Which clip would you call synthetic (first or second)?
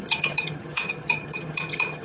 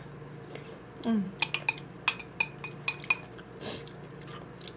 first